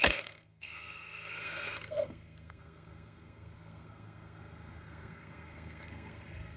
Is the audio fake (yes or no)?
yes